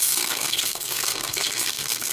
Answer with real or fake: fake